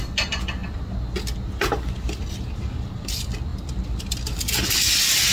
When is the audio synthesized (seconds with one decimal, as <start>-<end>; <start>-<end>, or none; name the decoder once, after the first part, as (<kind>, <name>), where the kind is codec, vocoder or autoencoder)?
none